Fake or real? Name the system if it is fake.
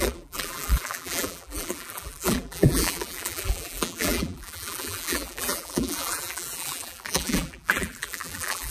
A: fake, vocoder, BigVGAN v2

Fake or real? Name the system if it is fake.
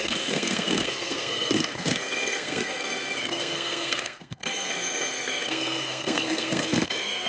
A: fake, codec, SNAC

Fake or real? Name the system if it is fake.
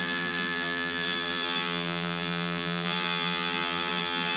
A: fake, vocoder, BigVGAN v2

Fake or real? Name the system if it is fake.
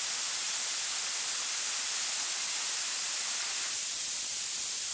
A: real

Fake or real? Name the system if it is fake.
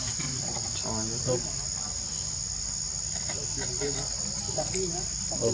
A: real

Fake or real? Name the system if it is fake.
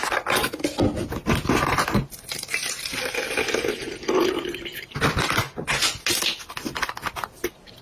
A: real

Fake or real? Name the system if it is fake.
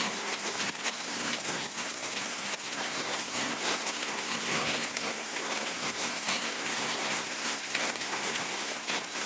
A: fake, codec, SNAC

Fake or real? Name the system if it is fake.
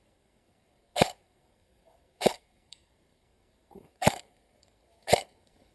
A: fake, codec, SNAC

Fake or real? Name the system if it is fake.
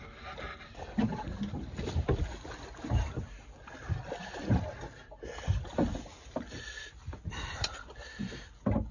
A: real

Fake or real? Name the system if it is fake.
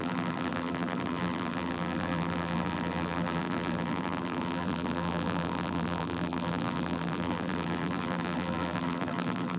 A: fake, vocoder, BigVGAN v2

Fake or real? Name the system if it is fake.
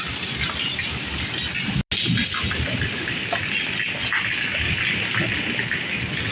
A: real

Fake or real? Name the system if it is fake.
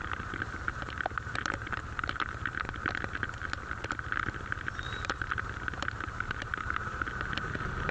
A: real